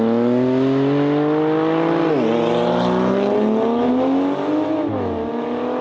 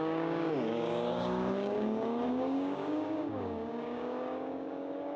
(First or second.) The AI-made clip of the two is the second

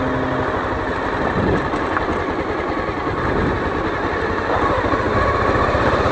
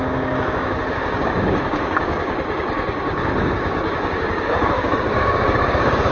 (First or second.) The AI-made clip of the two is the second